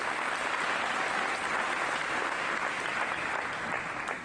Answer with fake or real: real